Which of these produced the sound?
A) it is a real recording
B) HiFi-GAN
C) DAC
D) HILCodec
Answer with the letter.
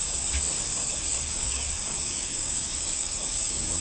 C